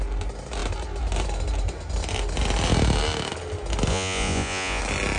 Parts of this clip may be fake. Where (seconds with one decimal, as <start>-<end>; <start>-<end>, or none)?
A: 3.9-4.8